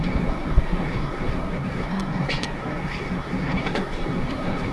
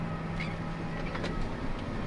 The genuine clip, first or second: second